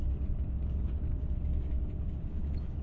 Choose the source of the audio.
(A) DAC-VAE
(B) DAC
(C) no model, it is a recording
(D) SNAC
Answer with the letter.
B